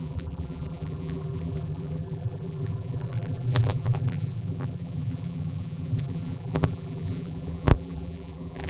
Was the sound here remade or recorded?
remade